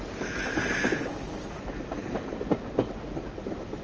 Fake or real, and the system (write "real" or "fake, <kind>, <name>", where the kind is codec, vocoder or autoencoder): real